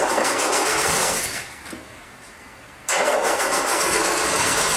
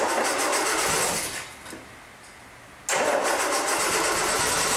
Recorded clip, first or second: second